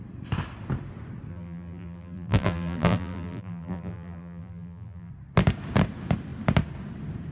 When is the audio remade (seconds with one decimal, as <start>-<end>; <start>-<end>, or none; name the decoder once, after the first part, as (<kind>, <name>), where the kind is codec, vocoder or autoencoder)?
1.3-5.1 (vocoder, BigVGAN v2)